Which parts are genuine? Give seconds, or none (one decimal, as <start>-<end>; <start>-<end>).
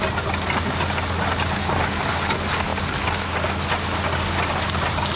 0.0-5.2